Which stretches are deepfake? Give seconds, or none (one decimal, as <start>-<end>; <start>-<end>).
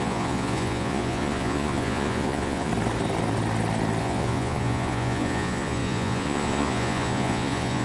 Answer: 0.0-2.7; 4.0-7.8